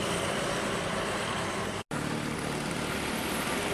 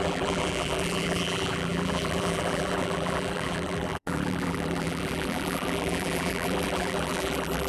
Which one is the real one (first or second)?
first